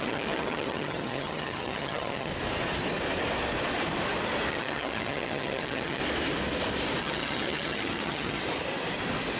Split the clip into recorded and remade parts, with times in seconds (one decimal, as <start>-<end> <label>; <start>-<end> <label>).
0.0-2.3 remade; 2.3-4.5 recorded; 4.5-6.0 remade; 6.0-7.0 recorded; 7.0-8.4 remade; 8.4-9.4 recorded